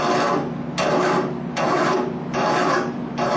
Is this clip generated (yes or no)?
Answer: no